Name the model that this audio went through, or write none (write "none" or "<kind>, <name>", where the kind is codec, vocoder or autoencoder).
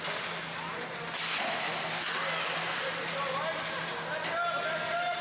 none